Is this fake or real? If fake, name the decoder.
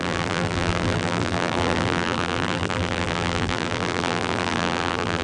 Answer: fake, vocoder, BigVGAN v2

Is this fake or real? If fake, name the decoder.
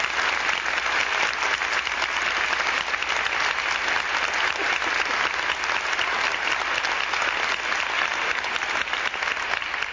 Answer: real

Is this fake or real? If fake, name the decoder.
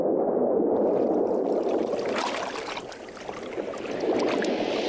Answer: real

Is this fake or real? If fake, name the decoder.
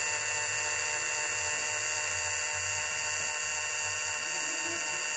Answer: real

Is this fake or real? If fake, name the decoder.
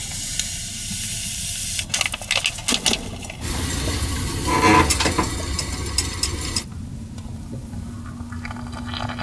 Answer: real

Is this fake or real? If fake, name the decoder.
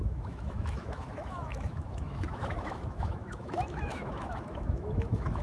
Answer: fake, autoencoder, DAC-VAE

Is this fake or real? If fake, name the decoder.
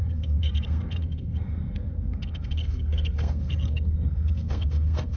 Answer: fake, codec, SNAC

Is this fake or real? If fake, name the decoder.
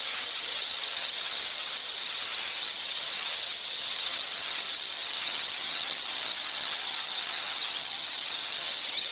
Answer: fake, vocoder, HiFi-GAN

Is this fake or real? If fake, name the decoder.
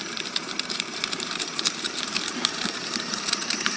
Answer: fake, vocoder, BigVGAN v2